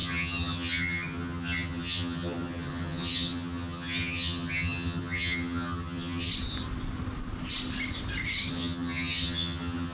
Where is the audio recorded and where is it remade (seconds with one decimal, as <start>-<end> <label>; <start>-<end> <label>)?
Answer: 0.0-6.3 remade; 6.3-8.5 recorded; 8.5-9.9 remade